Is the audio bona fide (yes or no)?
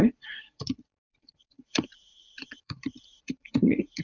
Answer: no